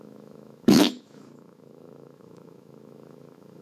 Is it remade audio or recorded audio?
remade